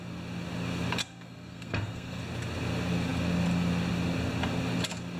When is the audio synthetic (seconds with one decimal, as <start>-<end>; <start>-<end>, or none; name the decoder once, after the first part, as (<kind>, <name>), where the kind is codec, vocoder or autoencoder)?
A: 1.0-2.2 (codec, SNAC)

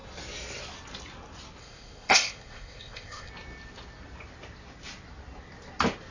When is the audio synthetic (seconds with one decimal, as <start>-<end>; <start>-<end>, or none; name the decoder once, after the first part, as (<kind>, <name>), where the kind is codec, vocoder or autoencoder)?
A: 1.6-3.3 (codec, ZipCodec)

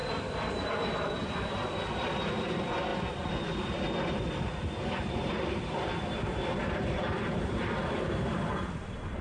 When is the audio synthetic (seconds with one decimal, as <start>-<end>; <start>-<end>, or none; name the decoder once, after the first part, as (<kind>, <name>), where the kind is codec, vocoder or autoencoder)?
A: 0.0-2.9 (vocoder, BigVGAN v2); 5.1-9.2

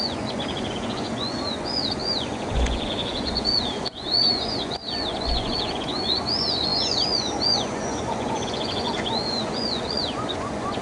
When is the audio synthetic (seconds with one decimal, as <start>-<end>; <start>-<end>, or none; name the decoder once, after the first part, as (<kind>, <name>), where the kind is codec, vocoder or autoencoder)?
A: 0.0-10.8 (vocoder, Vocos)

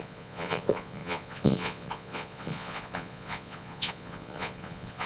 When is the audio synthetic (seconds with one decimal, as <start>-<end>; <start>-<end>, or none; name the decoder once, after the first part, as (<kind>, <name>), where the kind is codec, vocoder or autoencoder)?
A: 0.0-5.1 (vocoder, Vocos)

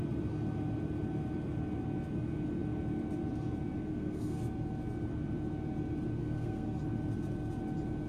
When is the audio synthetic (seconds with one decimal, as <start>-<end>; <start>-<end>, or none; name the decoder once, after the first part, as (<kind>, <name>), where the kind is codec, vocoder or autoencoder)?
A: 3.9-4.4 (codec, SNAC); 6.2-6.8

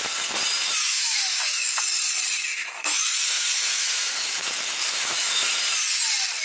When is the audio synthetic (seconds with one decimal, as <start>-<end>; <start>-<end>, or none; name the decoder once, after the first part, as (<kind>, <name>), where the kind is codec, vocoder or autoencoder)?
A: 0.8-1.8 (autoencoder, DAC-VAE); 2.5-5.6